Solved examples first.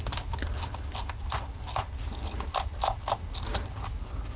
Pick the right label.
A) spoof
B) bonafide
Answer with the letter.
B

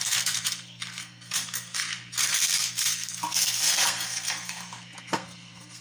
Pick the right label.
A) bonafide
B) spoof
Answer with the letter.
B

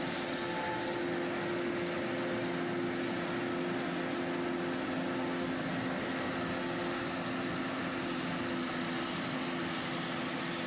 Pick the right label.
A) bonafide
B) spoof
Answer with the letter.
A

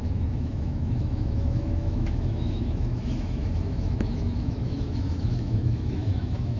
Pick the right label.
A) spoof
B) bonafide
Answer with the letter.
A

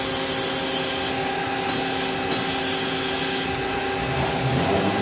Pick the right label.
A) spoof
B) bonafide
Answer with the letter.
B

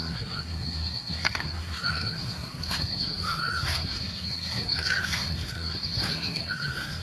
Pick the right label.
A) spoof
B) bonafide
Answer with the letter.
A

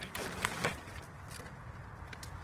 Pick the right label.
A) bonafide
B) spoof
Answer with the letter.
A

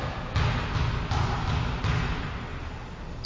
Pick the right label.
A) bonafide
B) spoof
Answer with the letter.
A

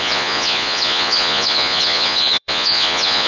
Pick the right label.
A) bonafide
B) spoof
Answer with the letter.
B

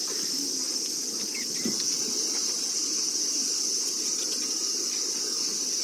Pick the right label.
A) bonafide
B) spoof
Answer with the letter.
A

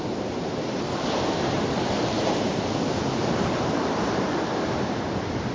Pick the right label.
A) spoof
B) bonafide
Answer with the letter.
B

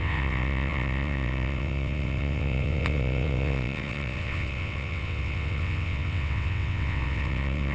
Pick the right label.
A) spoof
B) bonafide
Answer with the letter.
A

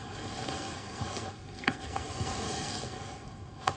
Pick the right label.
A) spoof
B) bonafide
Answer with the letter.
A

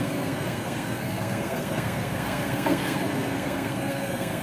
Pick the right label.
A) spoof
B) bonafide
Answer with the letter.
A